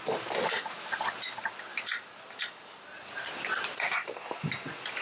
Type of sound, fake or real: real